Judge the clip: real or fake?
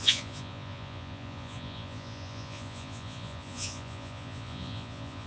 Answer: fake